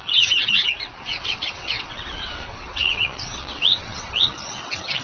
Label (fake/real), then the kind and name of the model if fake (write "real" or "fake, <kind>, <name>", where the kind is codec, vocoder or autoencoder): fake, vocoder, WaveNeXt